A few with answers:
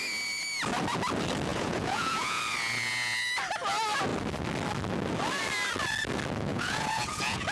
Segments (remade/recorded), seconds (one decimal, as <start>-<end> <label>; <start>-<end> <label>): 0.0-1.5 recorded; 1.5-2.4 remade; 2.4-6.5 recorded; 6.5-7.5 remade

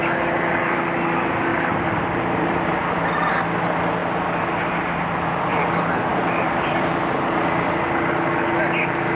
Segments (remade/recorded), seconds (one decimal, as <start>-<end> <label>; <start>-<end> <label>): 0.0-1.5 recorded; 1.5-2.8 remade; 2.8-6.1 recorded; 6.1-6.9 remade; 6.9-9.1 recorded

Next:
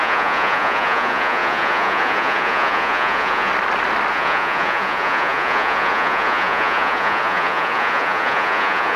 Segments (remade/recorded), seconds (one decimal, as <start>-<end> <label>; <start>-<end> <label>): 0.0-3.5 remade; 3.5-4.1 recorded; 4.1-9.0 remade